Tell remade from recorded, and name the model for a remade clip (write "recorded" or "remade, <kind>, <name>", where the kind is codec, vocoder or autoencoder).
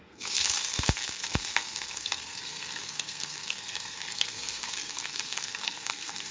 remade, codec, SNAC